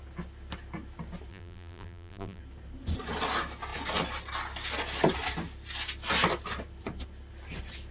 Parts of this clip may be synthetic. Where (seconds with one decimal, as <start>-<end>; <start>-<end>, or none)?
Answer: 1.3-2.4